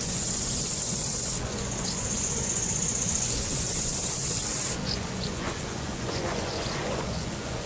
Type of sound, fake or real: fake